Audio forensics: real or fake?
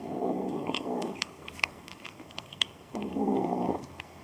fake